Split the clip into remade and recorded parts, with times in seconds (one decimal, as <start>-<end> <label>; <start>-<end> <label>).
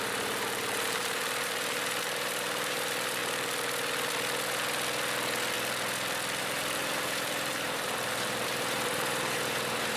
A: 0.0-3.2 remade; 3.2-6.4 recorded; 6.4-10.0 remade